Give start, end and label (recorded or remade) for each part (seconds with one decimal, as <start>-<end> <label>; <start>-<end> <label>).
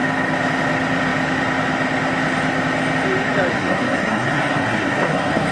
0.0-3.5 recorded; 3.5-5.5 remade